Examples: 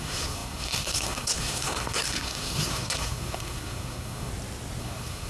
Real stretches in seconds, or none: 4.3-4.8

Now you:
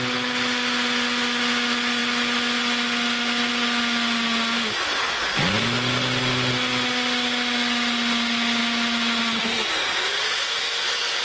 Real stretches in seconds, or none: 0.0-11.2

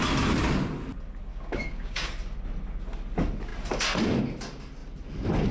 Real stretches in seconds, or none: 0.0-1.3; 2.1-5.5

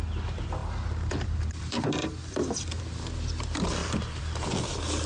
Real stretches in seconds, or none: 0.0-0.6; 2.8-3.8; 4.5-5.1

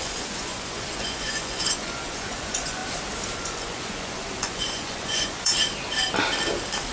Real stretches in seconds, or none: 2.8-3.4; 5.5-6.9